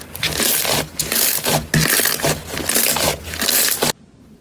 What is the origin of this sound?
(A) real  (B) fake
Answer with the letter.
A